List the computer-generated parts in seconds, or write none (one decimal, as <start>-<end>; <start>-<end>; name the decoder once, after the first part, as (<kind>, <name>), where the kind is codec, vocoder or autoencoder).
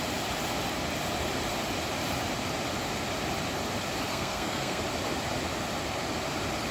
4.1-4.8 (codec, SNAC)